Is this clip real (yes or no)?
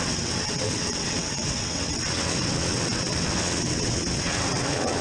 no